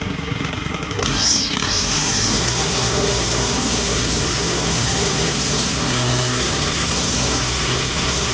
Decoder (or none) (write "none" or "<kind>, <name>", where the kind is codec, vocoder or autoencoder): codec, SNAC